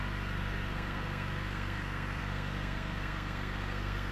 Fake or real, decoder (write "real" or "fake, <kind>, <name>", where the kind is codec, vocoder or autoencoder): fake, codec, SNAC